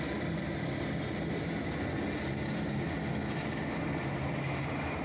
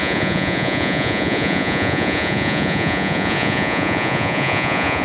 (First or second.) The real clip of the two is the first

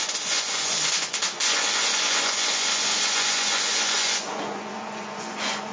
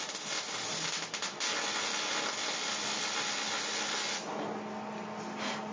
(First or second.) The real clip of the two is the second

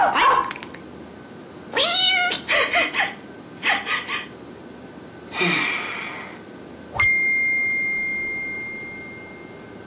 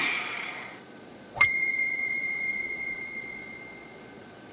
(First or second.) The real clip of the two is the first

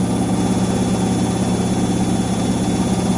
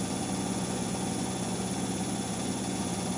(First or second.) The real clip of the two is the first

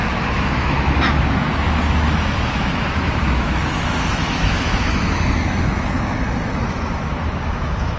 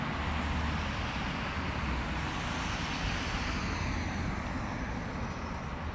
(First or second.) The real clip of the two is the second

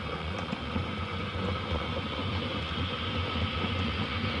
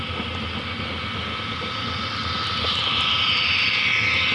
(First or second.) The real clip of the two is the second